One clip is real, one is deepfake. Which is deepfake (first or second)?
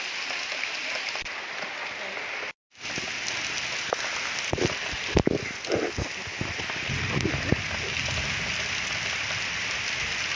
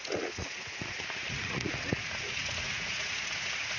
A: second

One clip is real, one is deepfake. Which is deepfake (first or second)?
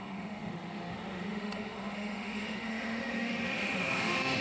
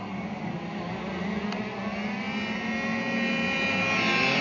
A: first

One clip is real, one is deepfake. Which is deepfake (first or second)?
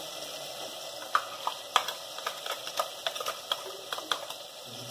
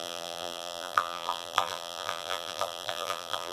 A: second